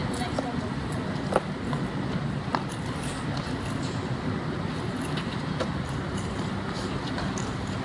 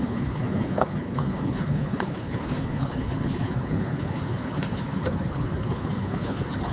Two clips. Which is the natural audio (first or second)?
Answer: first